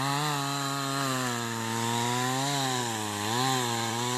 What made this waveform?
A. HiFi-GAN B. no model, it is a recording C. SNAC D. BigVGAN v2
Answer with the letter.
B